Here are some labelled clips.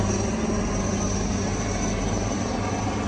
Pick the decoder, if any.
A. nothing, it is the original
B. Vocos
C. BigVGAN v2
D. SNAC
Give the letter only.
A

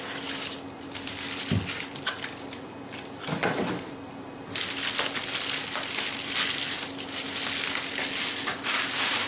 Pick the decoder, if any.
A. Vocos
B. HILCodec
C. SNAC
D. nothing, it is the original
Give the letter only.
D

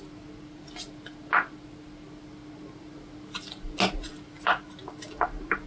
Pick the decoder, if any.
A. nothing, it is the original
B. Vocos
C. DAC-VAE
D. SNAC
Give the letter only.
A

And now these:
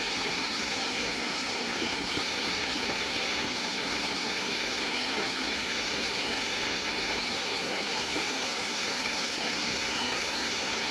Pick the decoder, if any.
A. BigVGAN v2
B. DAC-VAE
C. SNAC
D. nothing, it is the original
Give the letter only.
C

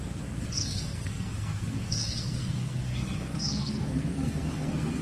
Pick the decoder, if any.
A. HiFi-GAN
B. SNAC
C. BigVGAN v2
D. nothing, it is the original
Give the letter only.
B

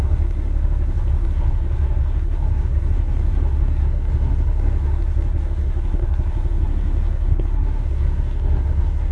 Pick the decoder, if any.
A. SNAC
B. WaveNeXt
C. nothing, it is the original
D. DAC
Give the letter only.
A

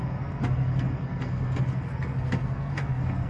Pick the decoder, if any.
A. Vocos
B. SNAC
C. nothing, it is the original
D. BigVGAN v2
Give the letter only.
B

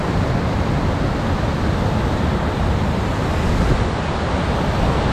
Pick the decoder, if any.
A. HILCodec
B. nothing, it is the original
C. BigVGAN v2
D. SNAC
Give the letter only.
B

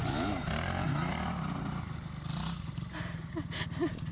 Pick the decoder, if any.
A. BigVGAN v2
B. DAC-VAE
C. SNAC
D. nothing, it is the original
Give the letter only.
D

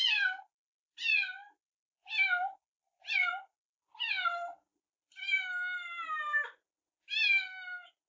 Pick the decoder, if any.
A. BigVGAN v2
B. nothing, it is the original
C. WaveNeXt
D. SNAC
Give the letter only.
B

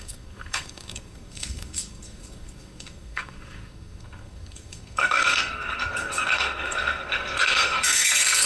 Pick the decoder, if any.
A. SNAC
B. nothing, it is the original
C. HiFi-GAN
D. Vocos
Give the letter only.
A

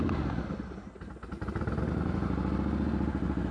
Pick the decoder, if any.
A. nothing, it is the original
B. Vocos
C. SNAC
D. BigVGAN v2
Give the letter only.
A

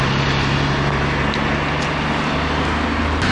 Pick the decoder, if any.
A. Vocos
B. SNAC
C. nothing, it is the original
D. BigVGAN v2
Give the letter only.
C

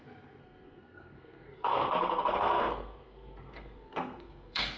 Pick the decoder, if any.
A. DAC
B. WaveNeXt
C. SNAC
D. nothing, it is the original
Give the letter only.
C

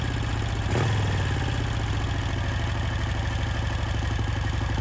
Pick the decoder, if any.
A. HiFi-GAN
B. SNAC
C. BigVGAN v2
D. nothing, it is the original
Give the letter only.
D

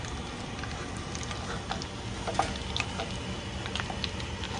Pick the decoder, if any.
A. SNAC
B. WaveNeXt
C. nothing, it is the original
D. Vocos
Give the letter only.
C